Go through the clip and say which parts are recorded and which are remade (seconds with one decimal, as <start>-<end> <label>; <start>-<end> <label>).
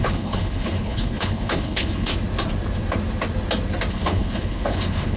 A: 0.0-2.1 remade; 2.1-3.9 recorded; 3.9-5.2 remade